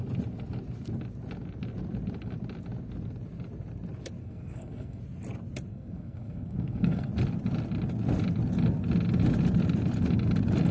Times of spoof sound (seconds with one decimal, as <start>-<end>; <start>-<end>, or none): 4.2-5.0; 5.7-7.1